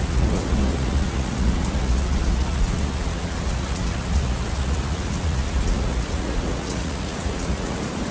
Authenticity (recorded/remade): remade